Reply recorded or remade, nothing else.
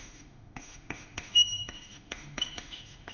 remade